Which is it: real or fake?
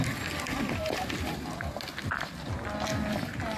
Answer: real